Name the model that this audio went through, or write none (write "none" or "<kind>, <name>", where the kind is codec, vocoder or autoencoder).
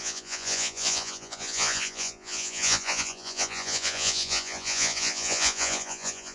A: vocoder, Vocos